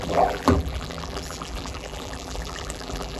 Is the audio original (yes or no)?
no